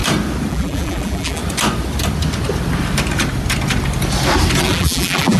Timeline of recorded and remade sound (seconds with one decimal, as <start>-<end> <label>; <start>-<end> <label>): 0.0-0.5 recorded; 0.5-1.4 remade; 1.4-4.6 recorded; 4.6-5.4 remade